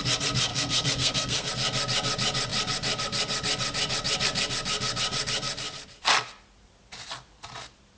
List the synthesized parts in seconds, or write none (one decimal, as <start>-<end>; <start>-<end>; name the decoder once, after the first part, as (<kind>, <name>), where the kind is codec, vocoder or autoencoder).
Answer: 0.5-1.5 (codec, SNAC)

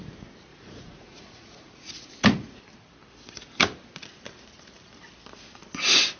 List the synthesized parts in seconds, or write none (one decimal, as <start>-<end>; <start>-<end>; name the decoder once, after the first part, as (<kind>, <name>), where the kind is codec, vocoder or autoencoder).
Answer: 0.5-2.6 (vocoder, Vocos)

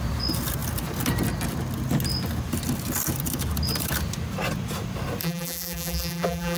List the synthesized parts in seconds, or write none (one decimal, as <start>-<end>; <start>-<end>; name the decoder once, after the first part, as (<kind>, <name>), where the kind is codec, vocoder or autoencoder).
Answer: 5.2-6.6 (vocoder, BigVGAN v2)